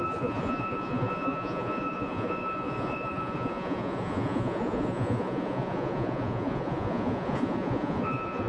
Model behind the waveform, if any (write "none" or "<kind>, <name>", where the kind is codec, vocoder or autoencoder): vocoder, Vocos